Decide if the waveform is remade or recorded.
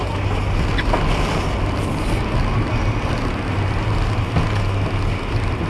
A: recorded